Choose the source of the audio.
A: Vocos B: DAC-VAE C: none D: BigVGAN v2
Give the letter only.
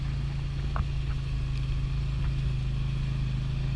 C